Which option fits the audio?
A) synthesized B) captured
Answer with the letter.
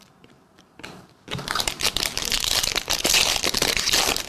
A